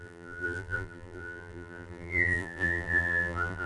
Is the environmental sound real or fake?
fake